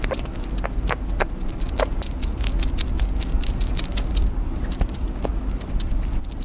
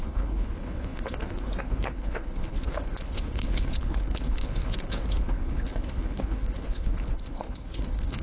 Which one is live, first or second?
first